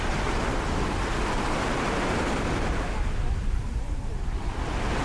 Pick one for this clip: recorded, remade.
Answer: recorded